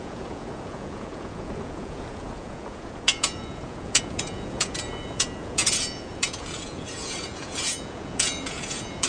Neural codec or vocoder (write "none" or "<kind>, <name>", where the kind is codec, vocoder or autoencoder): vocoder, Vocos